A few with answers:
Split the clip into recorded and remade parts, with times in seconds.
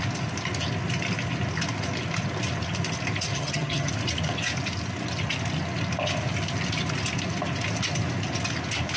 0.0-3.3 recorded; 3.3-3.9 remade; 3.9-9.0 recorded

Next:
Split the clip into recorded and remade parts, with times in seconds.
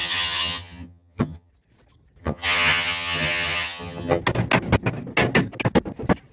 0.0-1.5 remade; 1.5-2.2 recorded; 2.2-4.2 remade; 4.2-6.3 recorded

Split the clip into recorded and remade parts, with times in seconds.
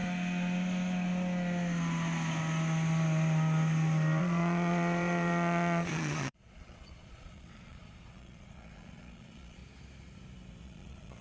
0.0-4.2 recorded; 4.2-9.6 remade; 9.6-10.6 recorded; 10.6-11.2 remade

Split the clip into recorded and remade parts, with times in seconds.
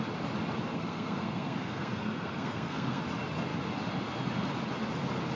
0.0-0.7 recorded; 0.7-3.0 remade; 3.0-5.4 recorded